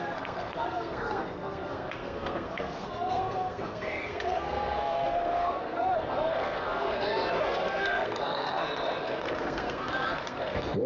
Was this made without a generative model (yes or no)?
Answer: no